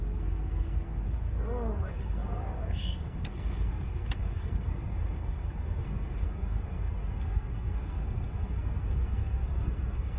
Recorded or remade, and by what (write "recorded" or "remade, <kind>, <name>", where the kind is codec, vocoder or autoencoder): remade, codec, SNAC